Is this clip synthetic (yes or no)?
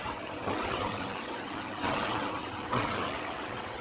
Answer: yes